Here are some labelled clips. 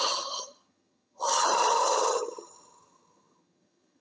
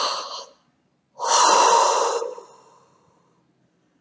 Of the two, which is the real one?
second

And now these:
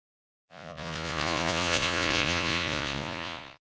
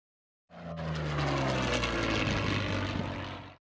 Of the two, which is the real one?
second